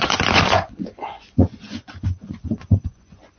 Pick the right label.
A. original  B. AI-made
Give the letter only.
B